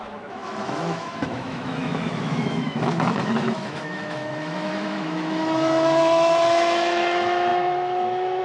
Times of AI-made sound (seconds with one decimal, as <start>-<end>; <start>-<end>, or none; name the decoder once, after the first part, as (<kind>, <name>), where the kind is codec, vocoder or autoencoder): 0.0-8.4 (autoencoder, DAC-VAE)

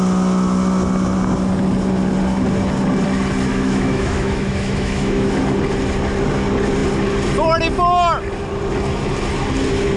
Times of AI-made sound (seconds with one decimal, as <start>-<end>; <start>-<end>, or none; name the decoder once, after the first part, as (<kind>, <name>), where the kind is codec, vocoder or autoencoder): 3.5-5.4 (autoencoder, DAC-VAE)

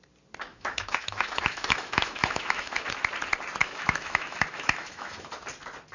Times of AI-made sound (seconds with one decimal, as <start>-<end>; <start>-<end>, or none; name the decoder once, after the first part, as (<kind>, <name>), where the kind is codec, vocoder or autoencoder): 0.5-2.9 (autoencoder, DAC-VAE); 3.6-5.3